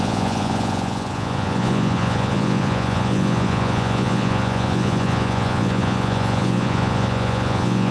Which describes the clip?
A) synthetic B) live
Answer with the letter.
A